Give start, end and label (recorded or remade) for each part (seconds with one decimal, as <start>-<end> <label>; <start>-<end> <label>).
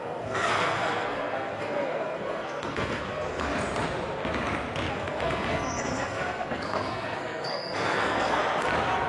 0.0-3.5 remade; 3.5-4.9 recorded; 4.9-8.4 remade; 8.4-9.1 recorded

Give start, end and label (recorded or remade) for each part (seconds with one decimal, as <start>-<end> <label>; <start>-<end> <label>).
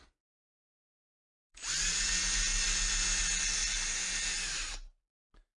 0.0-1.0 recorded; 1.0-2.1 remade; 2.1-3.6 recorded; 3.6-4.7 remade; 4.7-5.6 recorded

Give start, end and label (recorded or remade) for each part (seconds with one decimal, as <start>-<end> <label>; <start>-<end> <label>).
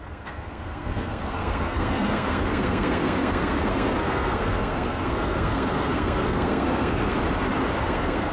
0.0-7.2 remade; 7.2-7.8 recorded; 7.8-8.3 remade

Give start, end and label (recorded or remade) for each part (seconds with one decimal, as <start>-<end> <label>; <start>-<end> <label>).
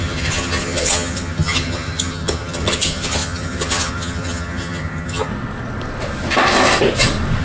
0.0-5.3 remade; 5.3-7.4 recorded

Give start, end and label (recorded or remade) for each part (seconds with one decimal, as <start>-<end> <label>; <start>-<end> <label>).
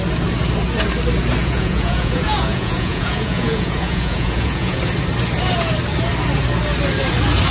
0.0-1.4 recorded; 1.4-4.8 remade; 4.8-7.5 recorded